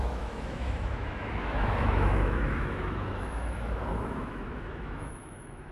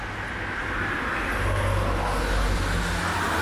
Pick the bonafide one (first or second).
second